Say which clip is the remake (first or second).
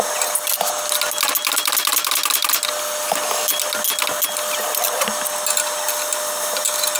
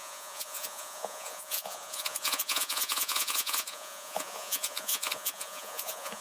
second